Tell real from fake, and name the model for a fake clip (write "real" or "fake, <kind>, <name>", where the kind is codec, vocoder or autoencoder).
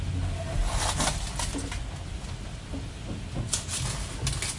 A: real